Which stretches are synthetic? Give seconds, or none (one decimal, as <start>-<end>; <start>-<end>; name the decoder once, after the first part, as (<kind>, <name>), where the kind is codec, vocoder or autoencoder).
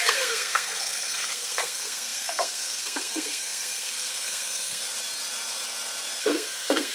0.0-4.8 (codec, SNAC); 6.2-6.9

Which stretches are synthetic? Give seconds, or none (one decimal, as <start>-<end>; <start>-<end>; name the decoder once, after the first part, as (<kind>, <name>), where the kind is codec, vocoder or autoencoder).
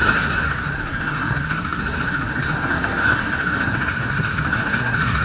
0.0-5.2 (codec, SNAC)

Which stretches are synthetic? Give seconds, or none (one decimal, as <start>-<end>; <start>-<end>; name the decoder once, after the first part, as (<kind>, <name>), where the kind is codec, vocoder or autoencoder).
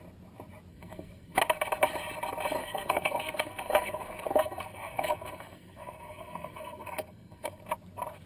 0.7-1.4 (codec, SNAC); 2.6-7.6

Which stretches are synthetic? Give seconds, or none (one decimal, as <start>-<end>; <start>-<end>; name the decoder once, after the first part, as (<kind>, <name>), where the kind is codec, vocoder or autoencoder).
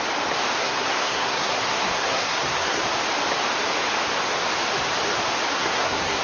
0.6-2.8 (codec, SNAC); 5.5-6.2